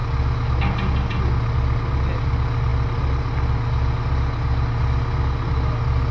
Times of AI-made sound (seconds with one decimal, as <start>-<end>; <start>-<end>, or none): none